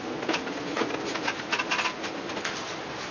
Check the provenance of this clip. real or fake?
real